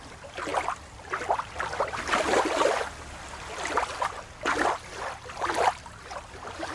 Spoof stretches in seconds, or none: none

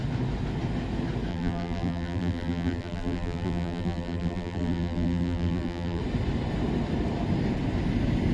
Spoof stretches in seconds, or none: 1.3-6.0 (vocoder, BigVGAN v2)

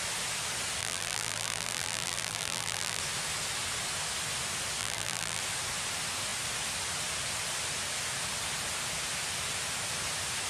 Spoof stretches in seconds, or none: 0.8-3.0 (vocoder, BigVGAN v2); 4.8-5.4

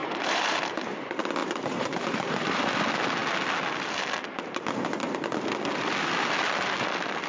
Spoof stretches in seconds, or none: 0.0-0.7 (vocoder, BigVGAN v2); 1.4-2.6

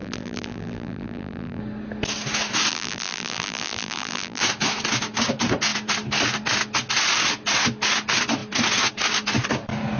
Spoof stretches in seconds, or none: 0.0-1.6 (vocoder, BigVGAN v2); 2.7-4.4

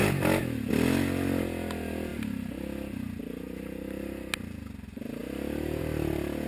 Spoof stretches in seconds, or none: 0.0-0.7 (vocoder, BigVGAN v2)

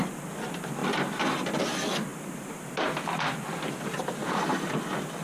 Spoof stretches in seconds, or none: 2.1-2.6 (vocoder, BigVGAN v2); 4.2-4.8

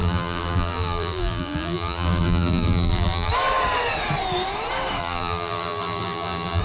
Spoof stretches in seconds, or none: 0.0-3.3 (vocoder, BigVGAN v2); 5.0-6.6